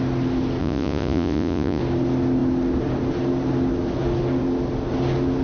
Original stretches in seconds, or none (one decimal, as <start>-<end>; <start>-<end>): 0.0-0.6; 1.8-5.4

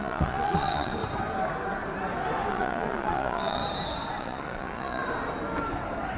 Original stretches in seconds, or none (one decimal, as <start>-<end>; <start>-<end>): 1.0-2.5; 3.6-4.2; 5.0-6.2

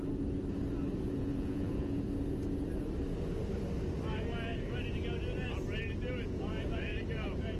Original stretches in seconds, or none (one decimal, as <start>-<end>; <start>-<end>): 0.0-1.2; 2.0-7.6

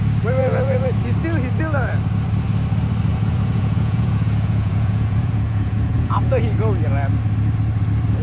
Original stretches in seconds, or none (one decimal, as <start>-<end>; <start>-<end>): 0.0-0.4; 1.0-3.1; 6.4-8.2

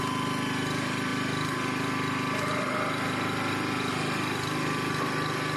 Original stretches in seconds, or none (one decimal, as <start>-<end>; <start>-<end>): 0.0-5.6

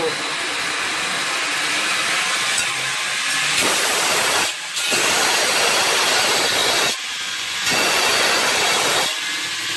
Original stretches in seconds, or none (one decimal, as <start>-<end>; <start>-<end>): 0.0-6.6; 8.6-9.8

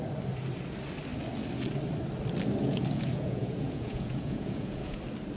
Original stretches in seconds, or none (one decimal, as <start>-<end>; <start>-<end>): 0.0-2.6; 5.0-5.4

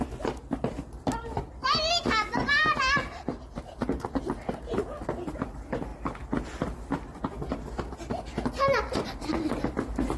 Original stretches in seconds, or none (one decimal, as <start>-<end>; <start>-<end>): 0.0-10.2